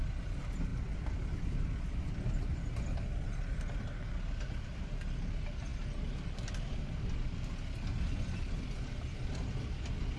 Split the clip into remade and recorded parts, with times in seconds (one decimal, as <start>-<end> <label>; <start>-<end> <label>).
0.0-10.2 recorded